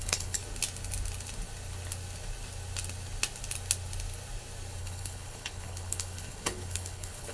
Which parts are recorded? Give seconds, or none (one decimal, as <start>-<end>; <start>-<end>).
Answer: 0.4-4.8